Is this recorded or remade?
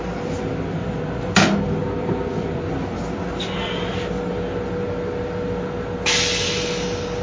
recorded